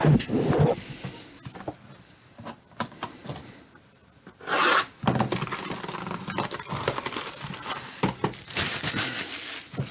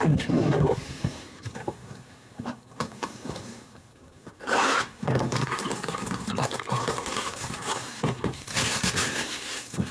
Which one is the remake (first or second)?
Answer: second